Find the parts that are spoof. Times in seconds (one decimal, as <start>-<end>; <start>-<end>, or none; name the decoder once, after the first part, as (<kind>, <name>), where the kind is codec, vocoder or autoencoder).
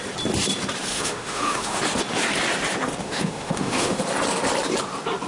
0.9-1.8 (autoencoder, DAC-VAE); 3.0-4.0